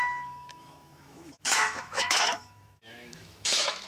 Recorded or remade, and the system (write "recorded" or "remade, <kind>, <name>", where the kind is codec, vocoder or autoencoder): remade, autoencoder, DAC-VAE